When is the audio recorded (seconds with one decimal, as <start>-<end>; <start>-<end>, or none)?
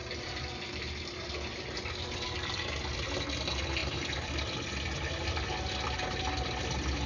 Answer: 1.3-3.8; 4.3-7.1